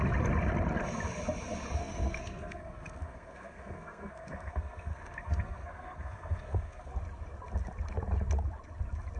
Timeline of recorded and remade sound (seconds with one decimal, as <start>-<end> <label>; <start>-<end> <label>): 0.0-1.8 recorded; 1.8-6.9 remade; 6.9-9.2 recorded